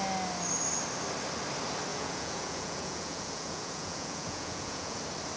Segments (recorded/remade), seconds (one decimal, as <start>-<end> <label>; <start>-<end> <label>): 0.0-1.9 recorded; 1.9-5.0 remade; 5.0-5.4 recorded